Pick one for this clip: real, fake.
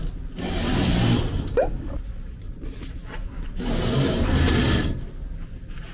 real